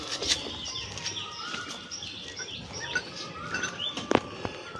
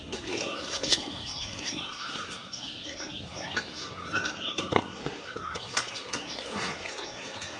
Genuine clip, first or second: first